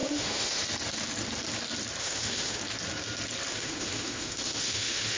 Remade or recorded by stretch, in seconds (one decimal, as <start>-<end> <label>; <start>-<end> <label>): 0.0-0.6 remade; 0.6-2.0 recorded; 2.0-2.6 remade; 2.6-3.5 recorded; 3.5-5.2 remade